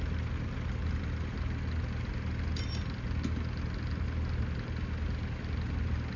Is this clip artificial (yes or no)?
no